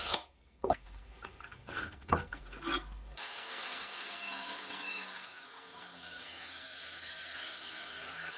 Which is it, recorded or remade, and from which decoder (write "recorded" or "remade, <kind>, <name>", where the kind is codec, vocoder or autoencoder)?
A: remade, codec, SNAC